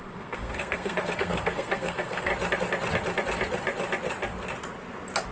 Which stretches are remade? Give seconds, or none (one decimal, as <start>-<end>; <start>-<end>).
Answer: 0.0-2.3